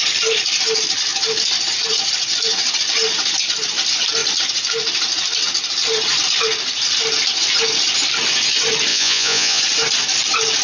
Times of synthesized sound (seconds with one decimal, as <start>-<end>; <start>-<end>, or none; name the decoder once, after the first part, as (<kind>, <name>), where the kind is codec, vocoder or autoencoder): 8.9-9.6 (vocoder, Vocos)